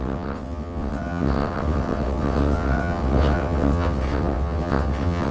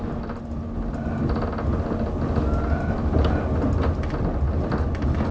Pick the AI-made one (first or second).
first